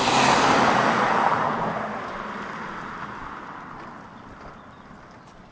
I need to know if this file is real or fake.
real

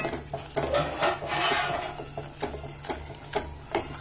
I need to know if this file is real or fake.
real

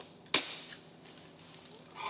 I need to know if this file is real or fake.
real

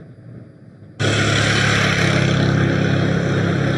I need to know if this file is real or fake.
real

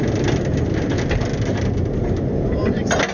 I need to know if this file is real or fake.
real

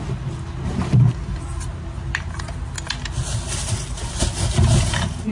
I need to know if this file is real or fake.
real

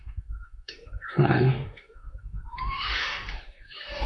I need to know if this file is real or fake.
fake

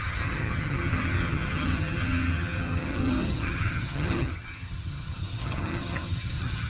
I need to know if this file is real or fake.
fake